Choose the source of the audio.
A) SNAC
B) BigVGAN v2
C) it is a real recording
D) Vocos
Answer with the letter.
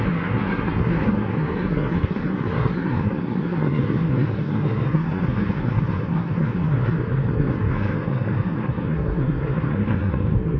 A